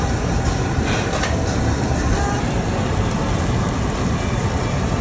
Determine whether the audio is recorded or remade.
recorded